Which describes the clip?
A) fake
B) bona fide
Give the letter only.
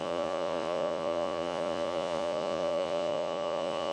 A